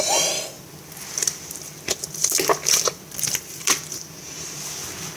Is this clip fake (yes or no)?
no